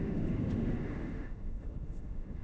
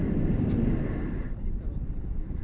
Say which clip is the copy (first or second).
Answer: first